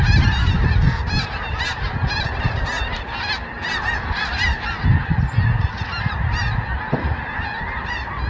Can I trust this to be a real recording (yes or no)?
yes